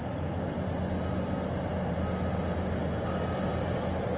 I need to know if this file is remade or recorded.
recorded